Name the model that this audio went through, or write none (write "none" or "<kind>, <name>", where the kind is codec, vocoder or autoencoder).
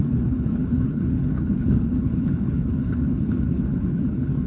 codec, HILCodec